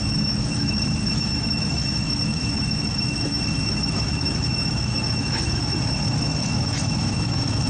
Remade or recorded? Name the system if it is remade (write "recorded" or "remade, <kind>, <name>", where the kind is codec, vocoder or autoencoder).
remade, autoencoder, DAC-VAE